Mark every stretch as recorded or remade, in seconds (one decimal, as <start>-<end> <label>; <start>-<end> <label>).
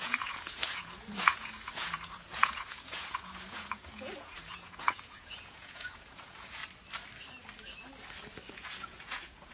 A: 0.0-6.6 remade; 6.6-8.5 recorded; 8.5-9.5 remade